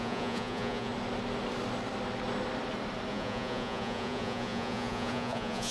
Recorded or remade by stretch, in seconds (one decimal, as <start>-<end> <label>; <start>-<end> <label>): 0.0-0.9 remade; 0.9-3.1 recorded; 3.1-5.7 remade